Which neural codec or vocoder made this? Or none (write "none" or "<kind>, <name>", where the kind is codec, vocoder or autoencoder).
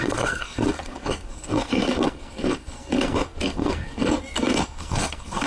codec, SNAC